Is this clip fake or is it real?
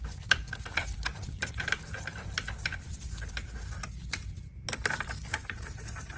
real